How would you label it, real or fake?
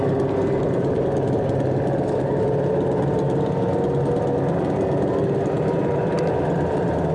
real